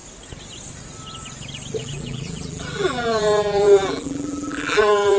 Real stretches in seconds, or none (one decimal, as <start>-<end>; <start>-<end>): 0.0-1.8